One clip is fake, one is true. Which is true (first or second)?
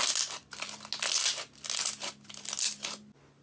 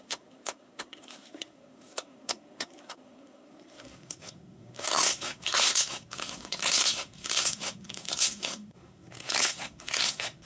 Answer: first